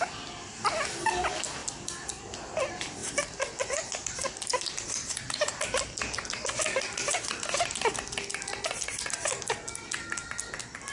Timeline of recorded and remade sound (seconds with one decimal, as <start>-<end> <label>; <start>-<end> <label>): 0.0-1.6 recorded; 1.6-2.2 remade; 2.2-3.0 recorded; 3.0-5.6 remade; 5.6-10.9 recorded